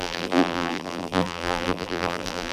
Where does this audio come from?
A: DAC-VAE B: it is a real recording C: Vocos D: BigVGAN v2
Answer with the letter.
D